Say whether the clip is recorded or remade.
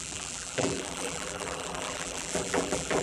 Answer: remade